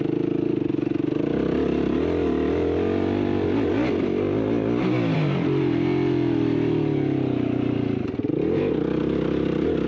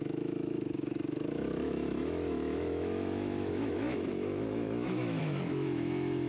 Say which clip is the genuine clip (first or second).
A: first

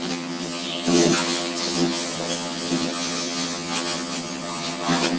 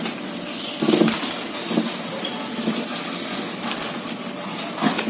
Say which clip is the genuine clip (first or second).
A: second